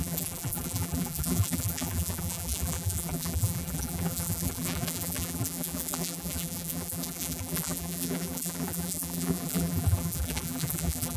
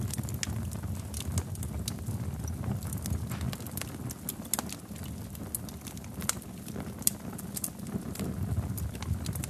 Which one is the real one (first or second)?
second